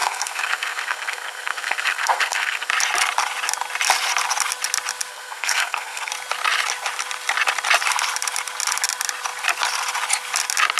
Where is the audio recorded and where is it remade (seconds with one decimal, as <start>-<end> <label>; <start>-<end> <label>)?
0.0-2.7 remade; 2.7-5.1 recorded; 5.1-6.1 remade; 6.1-10.8 recorded